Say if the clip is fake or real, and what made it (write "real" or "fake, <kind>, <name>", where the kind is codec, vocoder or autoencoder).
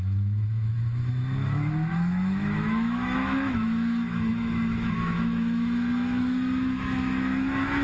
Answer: fake, autoencoder, DAC-VAE